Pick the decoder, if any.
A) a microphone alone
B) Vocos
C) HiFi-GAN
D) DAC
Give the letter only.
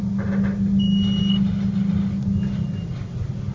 A